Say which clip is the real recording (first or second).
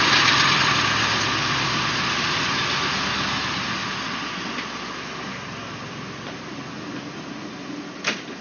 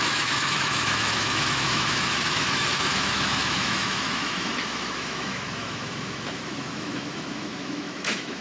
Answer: first